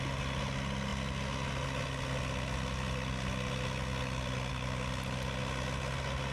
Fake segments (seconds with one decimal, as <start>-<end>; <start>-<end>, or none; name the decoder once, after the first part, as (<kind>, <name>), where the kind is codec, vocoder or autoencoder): none